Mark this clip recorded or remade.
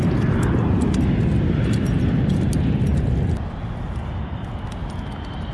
recorded